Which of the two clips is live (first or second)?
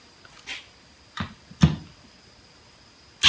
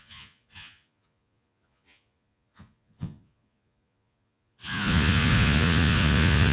first